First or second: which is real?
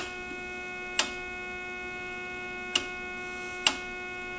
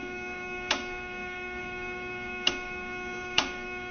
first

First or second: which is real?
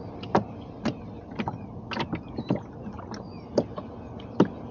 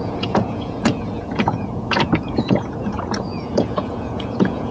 first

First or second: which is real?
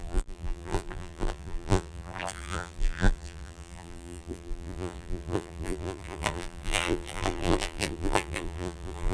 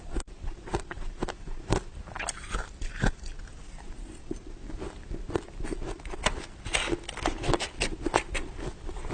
second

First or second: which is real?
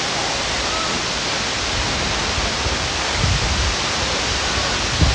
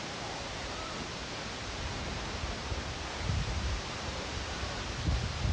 first